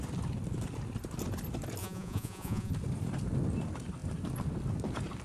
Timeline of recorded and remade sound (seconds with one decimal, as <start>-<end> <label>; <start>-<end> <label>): 0.0-1.8 recorded; 1.8-2.7 remade; 2.7-5.2 recorded